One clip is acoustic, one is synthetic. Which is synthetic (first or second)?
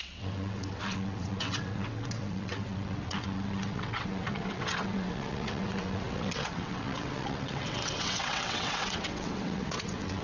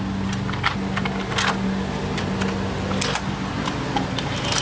first